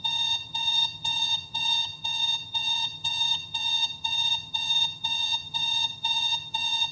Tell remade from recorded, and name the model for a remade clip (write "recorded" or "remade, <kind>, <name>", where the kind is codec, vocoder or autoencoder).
remade, vocoder, HiFi-GAN